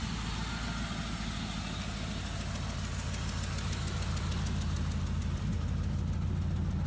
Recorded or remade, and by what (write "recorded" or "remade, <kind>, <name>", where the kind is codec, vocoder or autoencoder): recorded